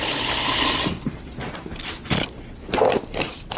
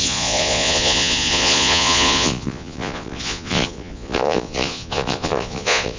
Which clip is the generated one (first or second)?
second